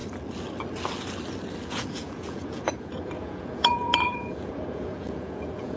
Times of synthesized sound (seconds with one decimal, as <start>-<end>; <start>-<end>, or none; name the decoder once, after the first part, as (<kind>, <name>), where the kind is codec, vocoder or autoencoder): 1.6-5.8 (vocoder, Vocos)